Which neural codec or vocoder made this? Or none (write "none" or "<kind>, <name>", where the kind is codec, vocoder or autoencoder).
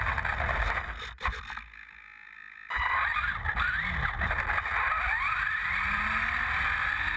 none